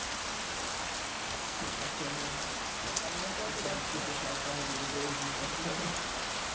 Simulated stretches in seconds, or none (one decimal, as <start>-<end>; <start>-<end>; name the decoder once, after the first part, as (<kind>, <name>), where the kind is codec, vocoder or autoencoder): 1.1-1.9 (codec, SNAC)